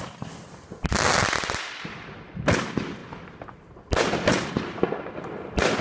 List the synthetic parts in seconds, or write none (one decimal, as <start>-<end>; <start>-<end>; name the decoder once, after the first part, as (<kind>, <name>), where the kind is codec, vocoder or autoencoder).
none